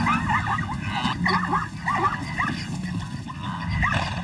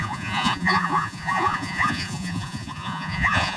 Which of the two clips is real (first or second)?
first